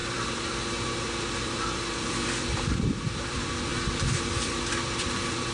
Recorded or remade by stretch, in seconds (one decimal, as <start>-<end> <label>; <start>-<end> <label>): 0.0-5.5 remade